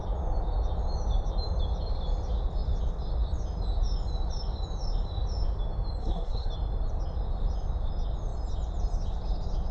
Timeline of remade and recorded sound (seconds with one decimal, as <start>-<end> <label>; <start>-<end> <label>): 0.0-6.0 recorded; 6.0-6.5 remade; 6.5-9.7 recorded